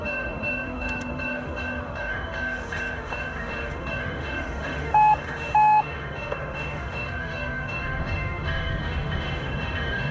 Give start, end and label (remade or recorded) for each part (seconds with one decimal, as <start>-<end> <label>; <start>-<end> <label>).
0.0-10.1 remade

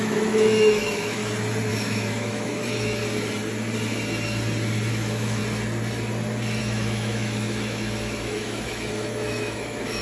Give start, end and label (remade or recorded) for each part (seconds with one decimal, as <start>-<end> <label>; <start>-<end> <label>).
0.0-1.2 remade; 1.2-1.7 recorded; 1.7-3.0 remade; 3.0-4.9 recorded; 4.9-5.4 remade; 5.4-6.6 recorded; 6.6-10.0 remade

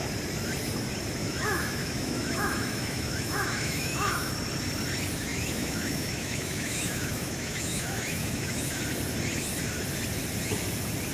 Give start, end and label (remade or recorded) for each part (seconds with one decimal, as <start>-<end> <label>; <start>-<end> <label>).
0.0-1.2 recorded; 1.2-4.3 remade; 4.3-5.3 recorded; 5.3-8.8 remade; 8.8-11.1 recorded